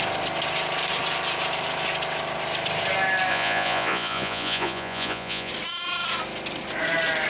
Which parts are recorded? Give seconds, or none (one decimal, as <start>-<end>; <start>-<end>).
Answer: 0.0-3.3; 5.5-7.3